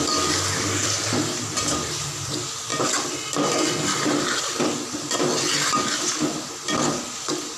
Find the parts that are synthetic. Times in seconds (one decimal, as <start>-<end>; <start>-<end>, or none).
0.8-1.5